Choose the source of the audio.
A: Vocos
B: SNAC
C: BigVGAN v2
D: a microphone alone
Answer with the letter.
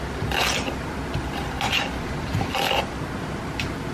D